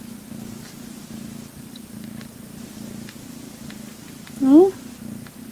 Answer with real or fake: real